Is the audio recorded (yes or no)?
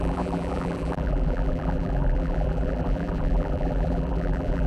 no